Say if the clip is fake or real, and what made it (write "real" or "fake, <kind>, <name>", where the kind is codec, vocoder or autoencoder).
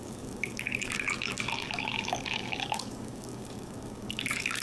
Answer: fake, codec, DAC